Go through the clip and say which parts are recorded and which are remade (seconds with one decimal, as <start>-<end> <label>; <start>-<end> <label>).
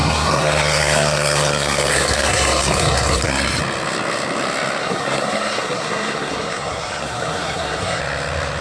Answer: 0.0-3.6 remade; 3.6-4.8 recorded; 4.8-8.0 remade; 8.0-8.6 recorded